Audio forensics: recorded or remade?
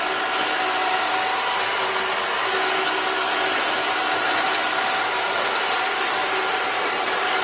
recorded